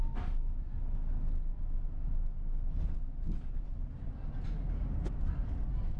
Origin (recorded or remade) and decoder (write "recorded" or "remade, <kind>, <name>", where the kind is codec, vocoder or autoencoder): recorded